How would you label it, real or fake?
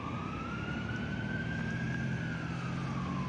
real